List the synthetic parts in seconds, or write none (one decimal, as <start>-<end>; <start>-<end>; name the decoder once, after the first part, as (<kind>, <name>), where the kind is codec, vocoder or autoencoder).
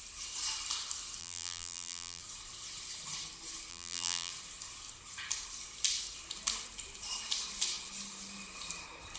1.2-2.2 (vocoder, BigVGAN v2); 3.7-4.3